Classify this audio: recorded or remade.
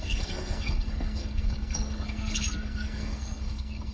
remade